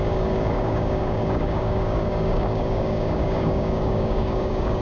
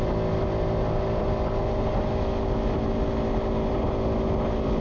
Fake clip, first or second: first